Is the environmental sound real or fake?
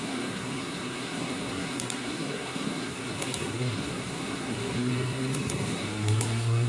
fake